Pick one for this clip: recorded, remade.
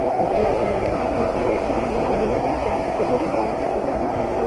remade